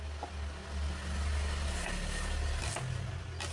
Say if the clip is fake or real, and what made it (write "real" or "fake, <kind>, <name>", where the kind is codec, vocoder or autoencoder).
real